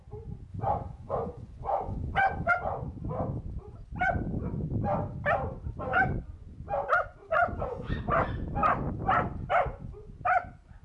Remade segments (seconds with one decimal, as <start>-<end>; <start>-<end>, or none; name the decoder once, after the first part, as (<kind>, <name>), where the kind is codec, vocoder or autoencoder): 0.5-2.5 (vocoder, Vocos); 5.9-6.6; 7.2-8.0